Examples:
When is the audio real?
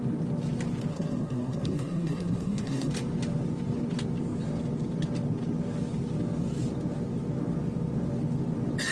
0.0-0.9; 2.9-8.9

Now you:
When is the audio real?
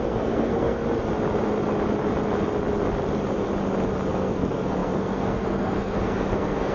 0.8-4.1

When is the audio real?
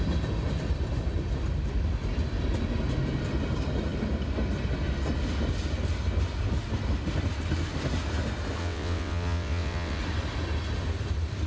0.0-8.6; 10.0-11.5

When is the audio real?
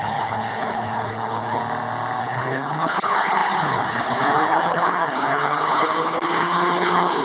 1.6-2.2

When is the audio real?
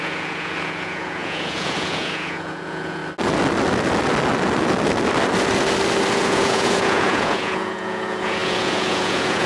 3.0-6.1